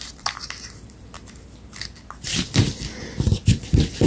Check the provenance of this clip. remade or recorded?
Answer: recorded